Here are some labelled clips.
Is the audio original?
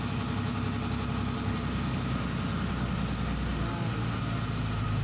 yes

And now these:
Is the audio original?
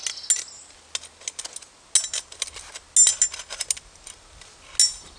yes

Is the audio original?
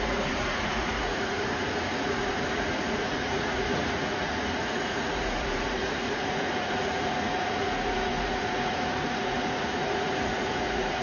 no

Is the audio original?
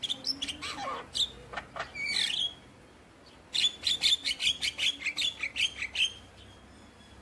yes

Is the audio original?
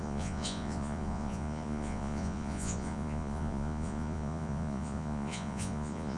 no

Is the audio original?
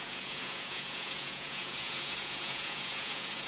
no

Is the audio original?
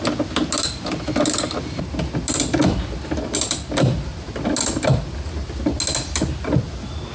yes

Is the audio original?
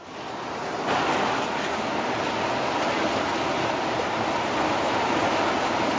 yes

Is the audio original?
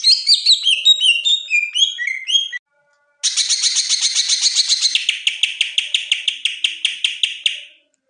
yes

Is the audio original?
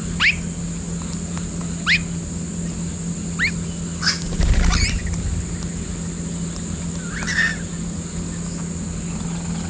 yes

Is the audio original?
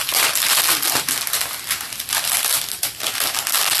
yes